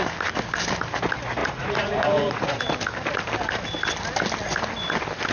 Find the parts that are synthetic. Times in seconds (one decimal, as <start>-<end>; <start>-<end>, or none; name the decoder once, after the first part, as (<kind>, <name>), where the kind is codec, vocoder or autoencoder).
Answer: 1.4-2.6 (vocoder, Vocos)